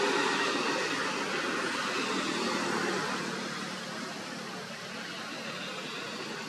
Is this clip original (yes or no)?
yes